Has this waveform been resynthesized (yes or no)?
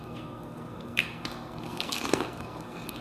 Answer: yes